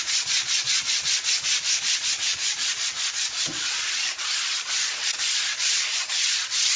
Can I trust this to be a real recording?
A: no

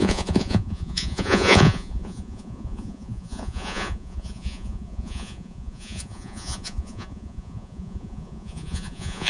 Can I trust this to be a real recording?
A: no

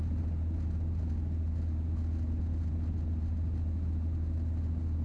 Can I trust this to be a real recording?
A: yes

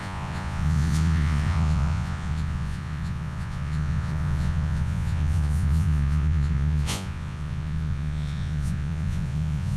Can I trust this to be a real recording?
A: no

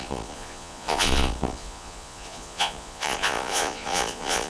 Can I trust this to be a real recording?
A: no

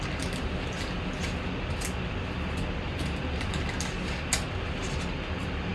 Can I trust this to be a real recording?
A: yes